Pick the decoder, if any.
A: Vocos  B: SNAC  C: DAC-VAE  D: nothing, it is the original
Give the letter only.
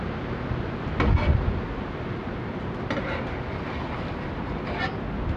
D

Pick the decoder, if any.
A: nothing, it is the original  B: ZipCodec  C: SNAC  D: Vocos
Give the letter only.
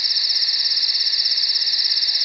A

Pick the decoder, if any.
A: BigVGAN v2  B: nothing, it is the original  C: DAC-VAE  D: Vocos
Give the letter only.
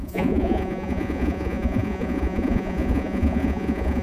D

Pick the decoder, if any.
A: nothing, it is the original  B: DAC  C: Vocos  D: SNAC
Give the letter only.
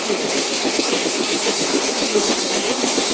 D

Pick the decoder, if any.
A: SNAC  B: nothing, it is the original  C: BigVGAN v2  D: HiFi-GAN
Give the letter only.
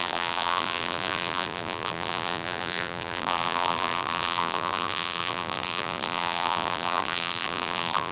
C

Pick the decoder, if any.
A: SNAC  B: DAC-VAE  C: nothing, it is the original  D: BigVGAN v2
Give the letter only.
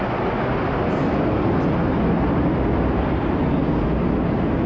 C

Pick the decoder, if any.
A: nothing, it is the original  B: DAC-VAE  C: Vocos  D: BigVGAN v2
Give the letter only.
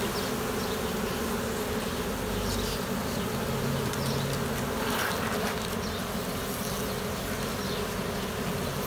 A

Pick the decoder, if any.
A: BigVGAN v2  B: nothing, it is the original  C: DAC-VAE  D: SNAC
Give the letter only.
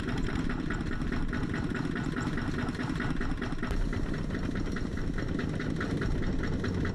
B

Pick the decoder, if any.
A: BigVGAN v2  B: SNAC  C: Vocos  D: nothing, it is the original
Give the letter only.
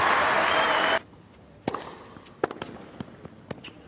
D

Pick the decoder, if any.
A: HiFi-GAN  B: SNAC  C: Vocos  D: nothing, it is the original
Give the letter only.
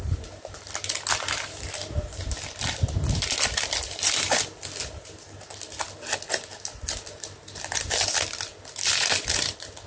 D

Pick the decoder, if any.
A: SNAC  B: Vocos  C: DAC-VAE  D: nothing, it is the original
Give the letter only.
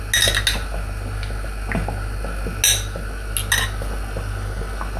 D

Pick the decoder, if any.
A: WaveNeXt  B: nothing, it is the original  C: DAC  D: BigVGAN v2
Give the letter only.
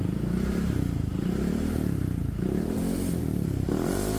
D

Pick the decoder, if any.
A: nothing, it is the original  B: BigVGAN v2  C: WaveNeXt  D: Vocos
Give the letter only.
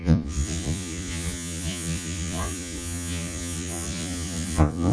D